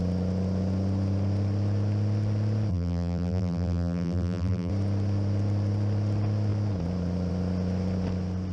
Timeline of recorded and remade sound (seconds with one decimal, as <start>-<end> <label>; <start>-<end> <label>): 0.0-2.7 recorded; 2.7-4.7 remade; 4.7-8.5 recorded